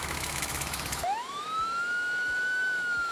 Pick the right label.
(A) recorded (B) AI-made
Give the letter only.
B